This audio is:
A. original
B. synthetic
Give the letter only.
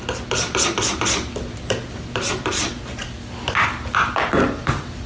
A